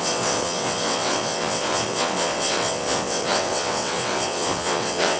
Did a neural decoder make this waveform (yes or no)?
yes